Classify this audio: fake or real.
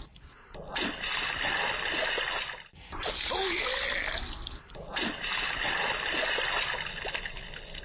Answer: fake